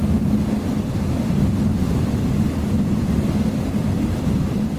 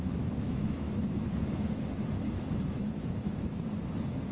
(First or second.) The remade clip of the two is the second